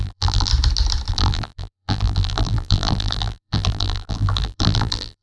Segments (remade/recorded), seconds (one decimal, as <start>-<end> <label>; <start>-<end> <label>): 0.0-0.5 remade; 0.5-1.1 recorded; 1.1-5.2 remade